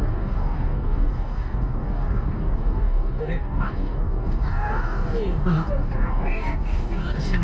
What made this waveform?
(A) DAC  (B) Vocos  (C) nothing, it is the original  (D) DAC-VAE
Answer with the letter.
A